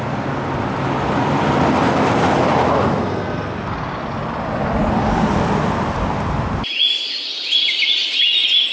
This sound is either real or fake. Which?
real